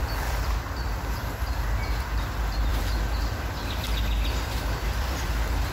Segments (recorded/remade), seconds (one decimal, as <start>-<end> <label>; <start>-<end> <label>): 0.0-5.7 recorded